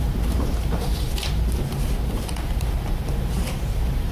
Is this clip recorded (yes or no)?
no